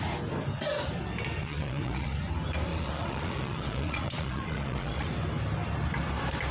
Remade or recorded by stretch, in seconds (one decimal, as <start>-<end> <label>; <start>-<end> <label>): 0.0-1.4 recorded; 1.4-2.2 remade; 2.2-2.7 recorded; 2.7-5.1 remade; 5.1-6.5 recorded